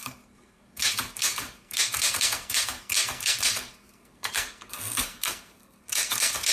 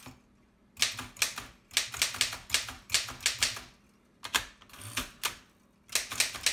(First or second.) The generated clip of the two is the first